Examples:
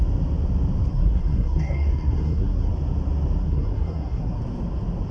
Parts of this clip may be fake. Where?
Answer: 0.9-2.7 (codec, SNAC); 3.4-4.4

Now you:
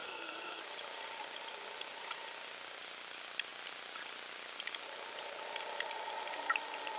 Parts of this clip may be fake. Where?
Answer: 0.0-0.6 (codec, SNAC)

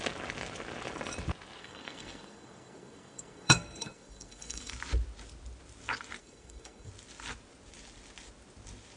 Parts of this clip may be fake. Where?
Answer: 1.6-4.7 (codec, SNAC); 6.2-6.9

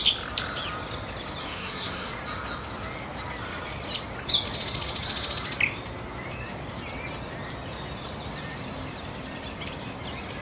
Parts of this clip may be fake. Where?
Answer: 1.4-2.1 (codec, SNAC)

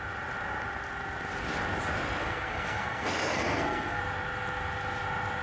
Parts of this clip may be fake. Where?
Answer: 2.2-4.0 (codec, SNAC)

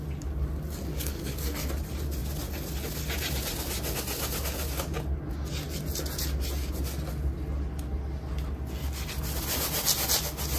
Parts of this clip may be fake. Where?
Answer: 0.9-1.7 (codec, SNAC)

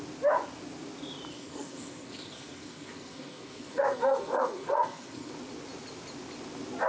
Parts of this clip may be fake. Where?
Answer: 1.3-5.3 (codec, SNAC)